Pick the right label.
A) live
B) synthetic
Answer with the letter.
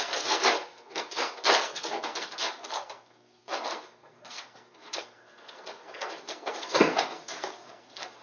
B